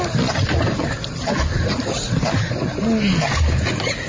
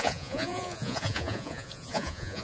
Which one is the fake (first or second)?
second